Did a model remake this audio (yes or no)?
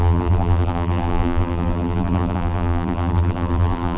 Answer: yes